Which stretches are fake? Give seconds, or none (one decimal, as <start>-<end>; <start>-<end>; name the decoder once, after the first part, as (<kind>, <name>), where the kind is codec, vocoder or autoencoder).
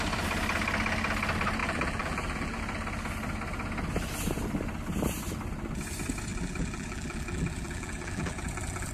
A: 1.6-2.6 (vocoder, BigVGAN v2); 6.3-8.9